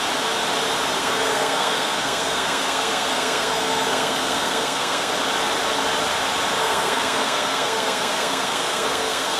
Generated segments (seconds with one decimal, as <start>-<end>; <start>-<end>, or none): 1.0-5.1; 6.6-9.4